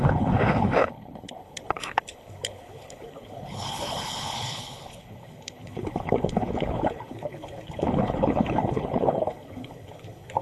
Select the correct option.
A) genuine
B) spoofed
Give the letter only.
B